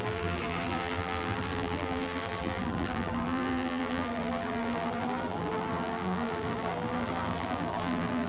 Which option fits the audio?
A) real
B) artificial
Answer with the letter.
B